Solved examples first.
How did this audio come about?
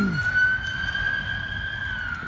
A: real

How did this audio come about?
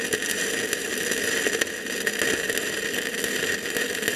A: real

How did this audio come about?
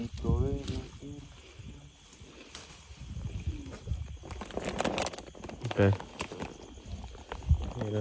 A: real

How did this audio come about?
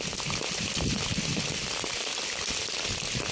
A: real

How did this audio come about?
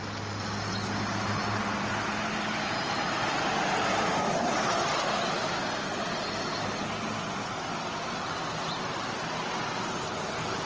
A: real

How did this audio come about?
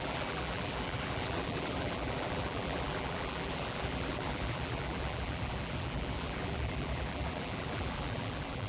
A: fake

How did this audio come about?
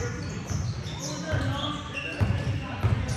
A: real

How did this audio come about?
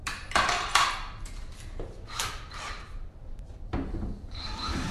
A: fake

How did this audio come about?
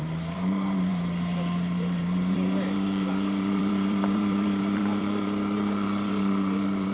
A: fake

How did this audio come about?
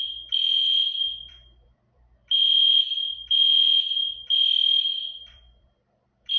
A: fake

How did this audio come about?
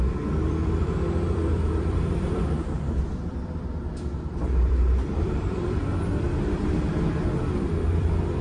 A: fake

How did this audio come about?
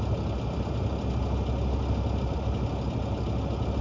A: real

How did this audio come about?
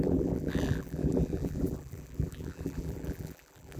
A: fake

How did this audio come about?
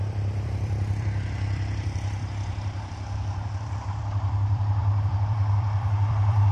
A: fake